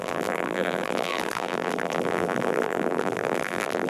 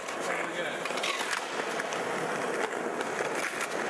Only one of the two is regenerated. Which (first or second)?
first